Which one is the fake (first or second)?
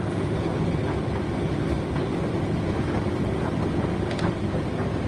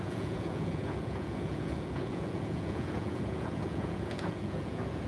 second